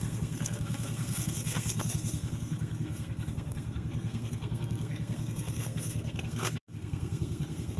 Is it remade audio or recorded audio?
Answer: remade